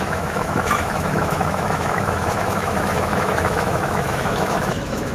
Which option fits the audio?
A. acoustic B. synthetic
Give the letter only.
B